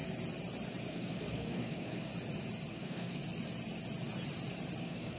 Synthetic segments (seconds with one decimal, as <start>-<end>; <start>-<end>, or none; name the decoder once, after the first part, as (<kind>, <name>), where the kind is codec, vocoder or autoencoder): 0.9-2.1 (codec, DAC); 2.7-3.2; 4.8-5.2